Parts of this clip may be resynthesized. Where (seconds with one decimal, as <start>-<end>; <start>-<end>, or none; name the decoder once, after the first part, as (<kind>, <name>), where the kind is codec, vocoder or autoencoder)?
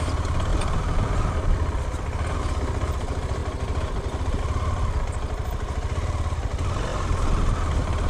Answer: none